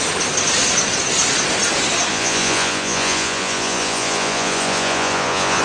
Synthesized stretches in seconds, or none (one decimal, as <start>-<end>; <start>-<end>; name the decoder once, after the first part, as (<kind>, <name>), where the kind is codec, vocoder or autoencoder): 2.1-5.6 (vocoder, Vocos)